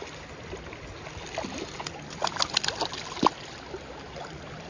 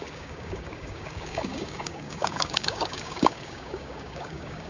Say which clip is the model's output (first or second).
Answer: second